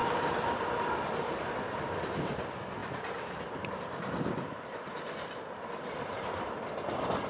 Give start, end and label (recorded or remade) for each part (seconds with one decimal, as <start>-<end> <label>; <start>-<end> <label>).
0.0-1.1 remade; 1.1-2.8 recorded; 2.8-7.3 remade